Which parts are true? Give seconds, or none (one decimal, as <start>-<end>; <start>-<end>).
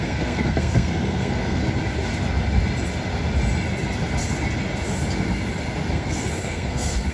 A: 1.6-5.9